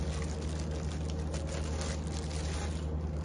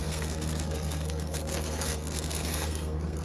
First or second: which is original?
first